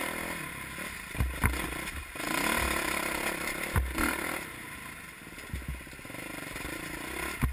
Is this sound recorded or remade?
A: recorded